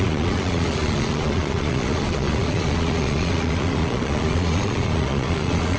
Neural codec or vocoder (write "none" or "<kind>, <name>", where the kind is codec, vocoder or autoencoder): vocoder, Vocos